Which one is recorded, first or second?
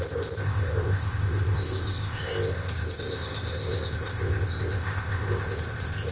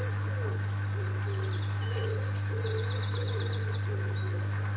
second